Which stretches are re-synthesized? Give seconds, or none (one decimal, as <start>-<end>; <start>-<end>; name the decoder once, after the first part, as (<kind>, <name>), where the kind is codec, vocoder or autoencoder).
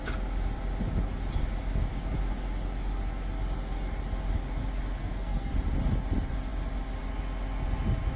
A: 5.0-5.5 (codec, SNAC)